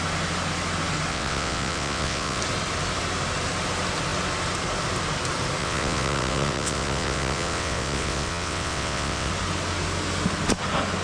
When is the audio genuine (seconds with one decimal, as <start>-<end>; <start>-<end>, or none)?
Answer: 0.0-1.1; 2.4-5.6; 9.3-11.0